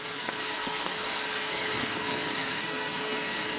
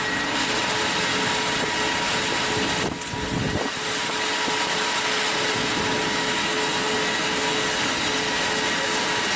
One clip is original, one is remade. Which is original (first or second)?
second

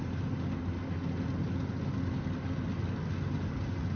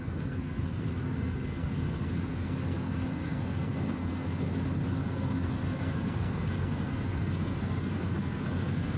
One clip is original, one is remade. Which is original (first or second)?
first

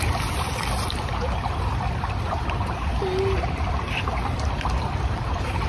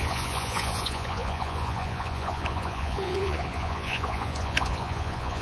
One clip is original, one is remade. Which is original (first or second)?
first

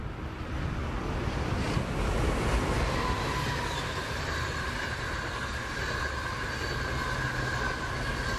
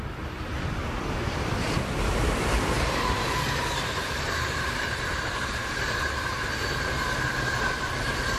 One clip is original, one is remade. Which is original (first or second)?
first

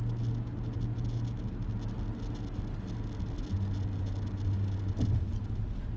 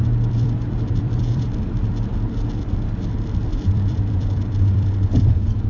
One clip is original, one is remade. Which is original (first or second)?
first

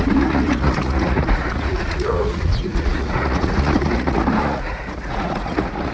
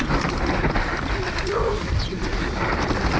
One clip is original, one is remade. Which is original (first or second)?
second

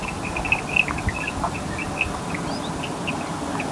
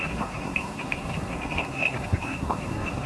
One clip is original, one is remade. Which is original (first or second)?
first